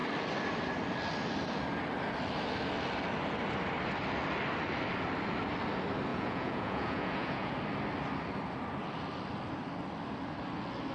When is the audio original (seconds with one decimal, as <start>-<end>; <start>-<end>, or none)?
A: 0.0-6.1; 7.5-10.9

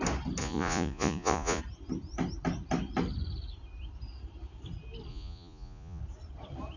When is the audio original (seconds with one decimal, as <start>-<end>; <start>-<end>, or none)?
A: 0.0-0.4; 1.6-5.1; 6.0-6.8

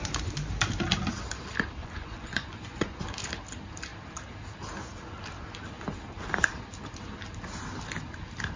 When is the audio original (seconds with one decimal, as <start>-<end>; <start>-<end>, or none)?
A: 0.0-1.8; 3.0-8.6

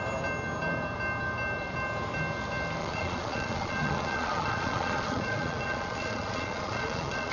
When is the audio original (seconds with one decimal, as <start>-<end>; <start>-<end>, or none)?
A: 0.0-2.8

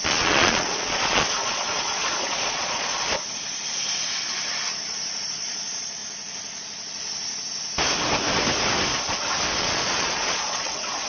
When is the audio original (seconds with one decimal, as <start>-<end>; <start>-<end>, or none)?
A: 2.9-5.2; 6.0-9.6

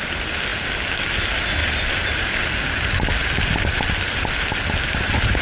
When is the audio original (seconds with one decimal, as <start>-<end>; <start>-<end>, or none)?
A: 0.0-5.4